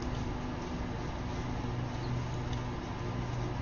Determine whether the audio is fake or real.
real